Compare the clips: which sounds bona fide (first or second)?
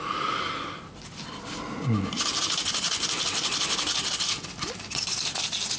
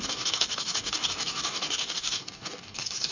first